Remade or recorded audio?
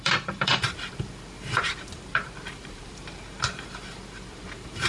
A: remade